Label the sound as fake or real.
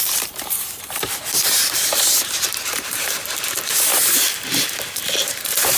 fake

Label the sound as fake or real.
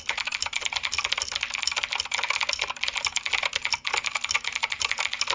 real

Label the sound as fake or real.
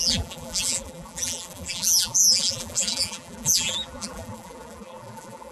fake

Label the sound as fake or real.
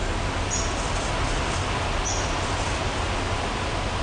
real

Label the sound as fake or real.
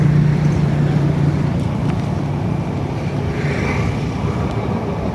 fake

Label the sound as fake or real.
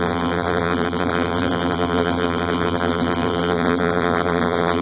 fake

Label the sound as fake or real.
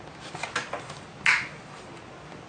real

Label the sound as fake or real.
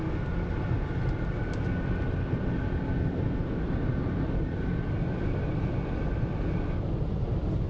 real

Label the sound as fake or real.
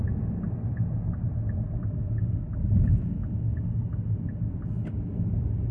real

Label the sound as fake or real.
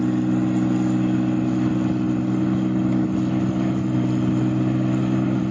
real